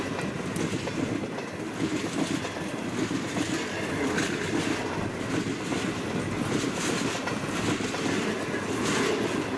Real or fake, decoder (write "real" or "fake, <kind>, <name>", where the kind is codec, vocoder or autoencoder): real